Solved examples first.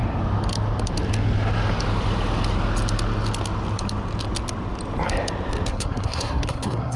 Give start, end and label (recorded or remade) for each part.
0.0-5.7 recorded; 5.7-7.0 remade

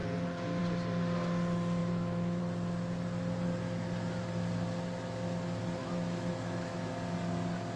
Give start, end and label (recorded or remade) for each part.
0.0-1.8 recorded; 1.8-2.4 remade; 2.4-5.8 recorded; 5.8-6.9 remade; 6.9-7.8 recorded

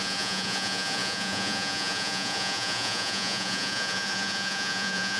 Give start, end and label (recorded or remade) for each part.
0.0-5.2 remade

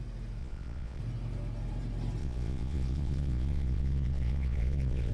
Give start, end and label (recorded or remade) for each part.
0.0-0.4 recorded; 0.4-1.0 remade; 1.0-2.2 recorded; 2.2-5.1 remade

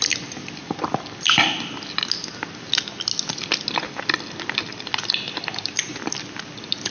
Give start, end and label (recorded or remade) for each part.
0.0-6.9 recorded

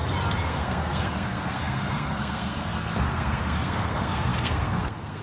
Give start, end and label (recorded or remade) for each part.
0.0-0.5 recorded; 0.5-5.2 remade

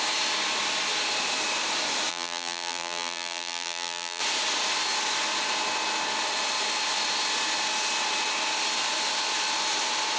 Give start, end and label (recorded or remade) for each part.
0.0-2.1 recorded; 2.1-4.2 remade; 4.2-10.2 recorded

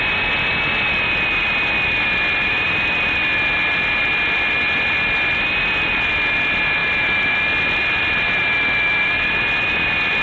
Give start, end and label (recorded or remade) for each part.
0.0-10.2 recorded